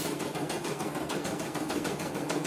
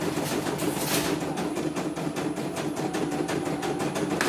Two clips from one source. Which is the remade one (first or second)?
first